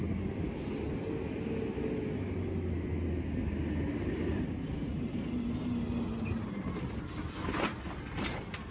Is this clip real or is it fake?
real